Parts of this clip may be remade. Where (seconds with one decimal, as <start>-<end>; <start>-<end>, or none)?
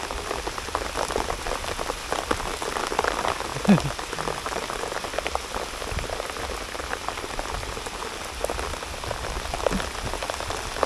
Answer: none